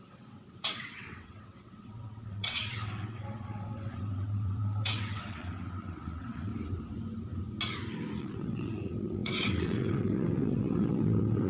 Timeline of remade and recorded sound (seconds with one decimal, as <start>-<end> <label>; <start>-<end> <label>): 0.0-6.5 remade; 6.5-8.2 recorded; 8.2-11.5 remade